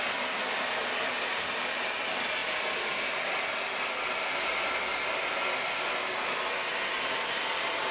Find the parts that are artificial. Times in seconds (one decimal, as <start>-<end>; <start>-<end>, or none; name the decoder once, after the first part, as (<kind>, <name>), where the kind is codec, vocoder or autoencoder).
none